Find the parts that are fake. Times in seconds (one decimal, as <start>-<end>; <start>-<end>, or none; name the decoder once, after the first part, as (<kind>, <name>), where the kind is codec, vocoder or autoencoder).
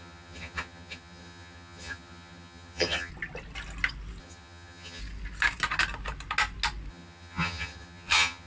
0.0-3.1 (vocoder, HiFi-GAN); 4.2-5.0; 6.9-8.5